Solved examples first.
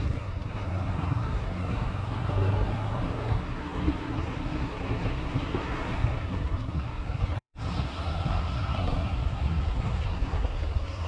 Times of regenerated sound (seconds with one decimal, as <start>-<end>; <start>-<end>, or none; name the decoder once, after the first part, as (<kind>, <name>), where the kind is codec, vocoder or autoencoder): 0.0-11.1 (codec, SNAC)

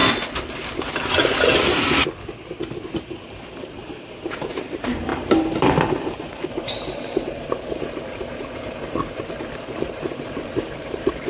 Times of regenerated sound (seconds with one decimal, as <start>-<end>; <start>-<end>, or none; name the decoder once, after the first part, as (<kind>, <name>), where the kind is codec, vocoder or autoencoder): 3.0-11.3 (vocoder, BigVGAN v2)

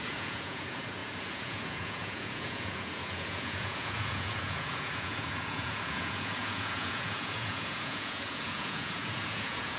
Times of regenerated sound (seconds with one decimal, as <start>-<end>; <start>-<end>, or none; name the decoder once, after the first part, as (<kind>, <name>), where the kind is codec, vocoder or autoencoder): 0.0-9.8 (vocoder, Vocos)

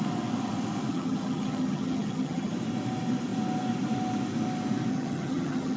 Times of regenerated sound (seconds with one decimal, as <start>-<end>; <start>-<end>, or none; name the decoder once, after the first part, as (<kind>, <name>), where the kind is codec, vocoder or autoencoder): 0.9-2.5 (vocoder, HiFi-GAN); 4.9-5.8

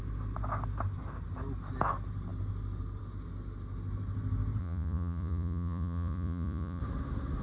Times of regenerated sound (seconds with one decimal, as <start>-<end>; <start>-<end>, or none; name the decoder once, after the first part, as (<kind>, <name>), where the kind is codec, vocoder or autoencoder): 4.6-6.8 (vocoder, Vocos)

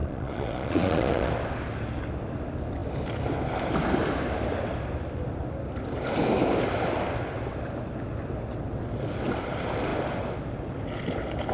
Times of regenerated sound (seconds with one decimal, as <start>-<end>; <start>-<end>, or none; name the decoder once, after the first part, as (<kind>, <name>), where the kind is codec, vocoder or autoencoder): 0.0-1.3 (vocoder, Vocos)